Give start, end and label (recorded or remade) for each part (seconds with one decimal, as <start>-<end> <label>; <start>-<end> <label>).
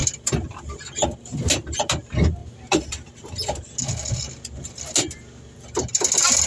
0.0-6.5 recorded